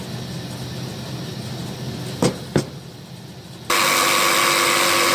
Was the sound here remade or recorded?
recorded